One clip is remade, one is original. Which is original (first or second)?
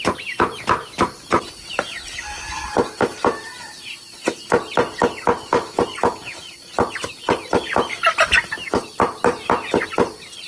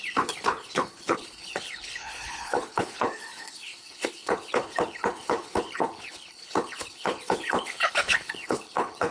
first